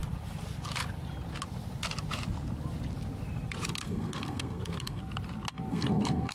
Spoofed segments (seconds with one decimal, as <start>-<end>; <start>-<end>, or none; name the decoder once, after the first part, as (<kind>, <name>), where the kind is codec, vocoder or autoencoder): 3.8-5.0 (codec, SNAC); 5.7-6.3